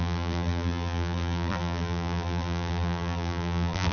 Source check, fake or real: fake